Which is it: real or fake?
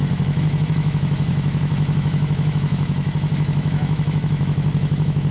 fake